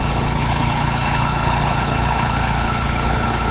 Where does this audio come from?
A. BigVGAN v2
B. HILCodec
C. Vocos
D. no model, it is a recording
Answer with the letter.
B